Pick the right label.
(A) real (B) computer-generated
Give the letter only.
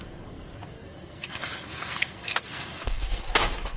B